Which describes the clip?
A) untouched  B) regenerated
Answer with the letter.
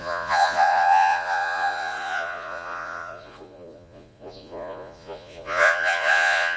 B